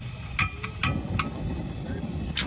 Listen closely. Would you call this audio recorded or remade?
recorded